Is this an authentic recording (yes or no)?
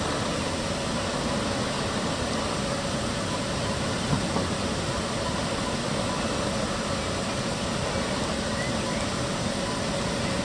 yes